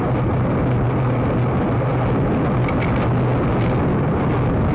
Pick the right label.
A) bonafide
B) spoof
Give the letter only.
A